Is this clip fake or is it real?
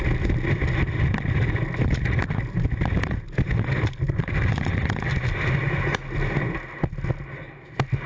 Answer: real